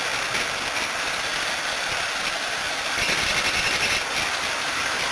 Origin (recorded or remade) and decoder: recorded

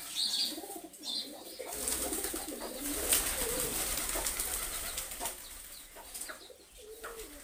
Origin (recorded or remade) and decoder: recorded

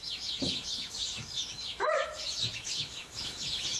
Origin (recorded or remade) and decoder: remade, autoencoder, DAC-VAE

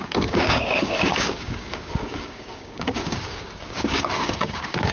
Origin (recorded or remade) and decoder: remade, codec, DAC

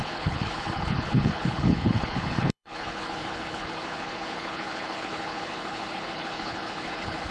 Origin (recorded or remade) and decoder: remade, codec, HILCodec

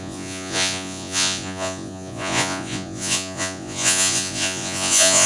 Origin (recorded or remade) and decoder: remade, vocoder, Vocos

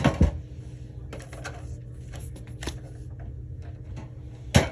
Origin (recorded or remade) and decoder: recorded